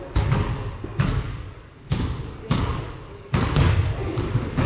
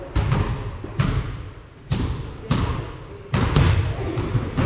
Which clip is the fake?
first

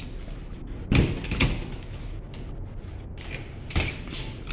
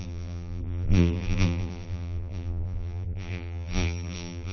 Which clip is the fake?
second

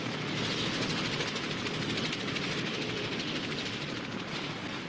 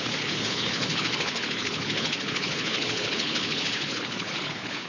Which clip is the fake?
second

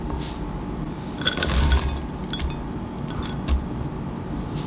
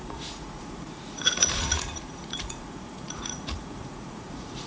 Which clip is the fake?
second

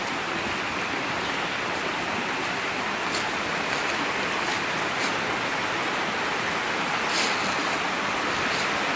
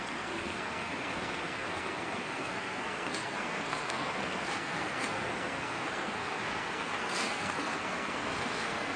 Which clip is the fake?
second